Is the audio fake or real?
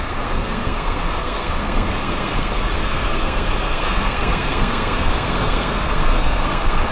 fake